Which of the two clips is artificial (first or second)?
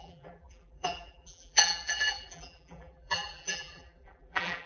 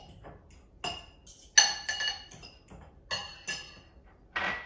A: first